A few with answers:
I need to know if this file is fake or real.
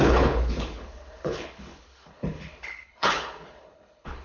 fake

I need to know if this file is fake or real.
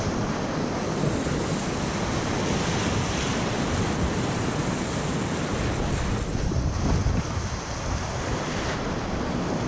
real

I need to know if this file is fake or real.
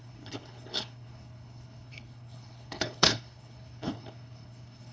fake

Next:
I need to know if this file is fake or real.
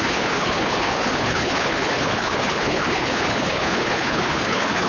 fake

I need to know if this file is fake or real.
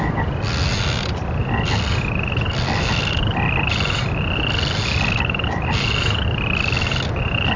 real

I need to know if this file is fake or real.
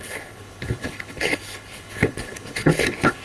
fake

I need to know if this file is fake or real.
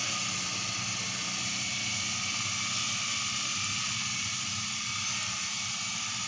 real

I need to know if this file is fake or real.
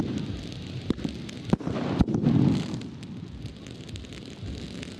real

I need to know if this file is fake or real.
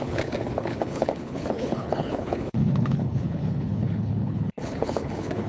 fake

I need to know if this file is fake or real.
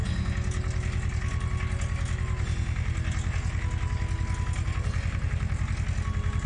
real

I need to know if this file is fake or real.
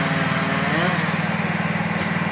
real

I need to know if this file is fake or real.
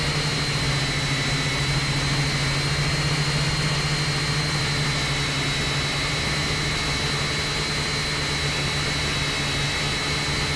real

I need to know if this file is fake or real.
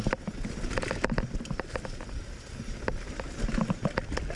real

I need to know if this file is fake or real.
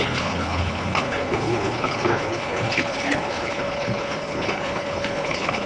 fake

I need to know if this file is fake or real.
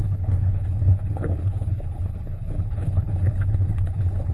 fake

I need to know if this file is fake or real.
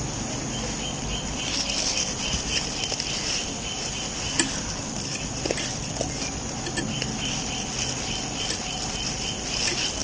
real